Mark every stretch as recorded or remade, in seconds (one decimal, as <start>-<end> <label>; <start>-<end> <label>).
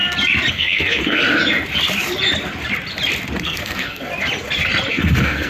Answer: 0.0-0.5 recorded; 0.5-1.2 remade; 1.2-3.4 recorded; 3.4-4.1 remade; 4.1-4.9 recorded; 4.9-5.5 remade